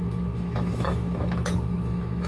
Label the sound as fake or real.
fake